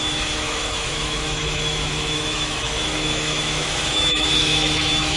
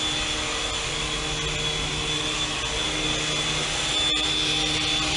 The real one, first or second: second